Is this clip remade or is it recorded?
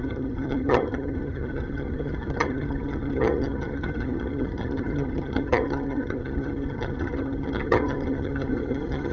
remade